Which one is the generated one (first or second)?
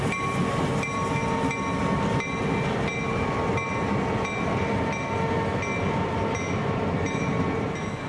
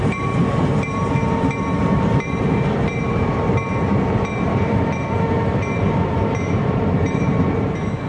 second